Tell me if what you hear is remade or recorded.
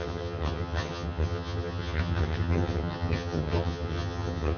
remade